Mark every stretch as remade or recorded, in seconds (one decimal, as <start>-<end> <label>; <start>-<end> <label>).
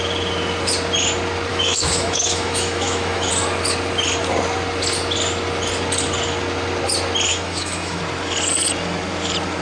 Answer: 0.0-1.5 recorded; 1.5-3.3 remade; 3.3-7.3 recorded; 7.3-8.0 remade; 8.0-9.6 recorded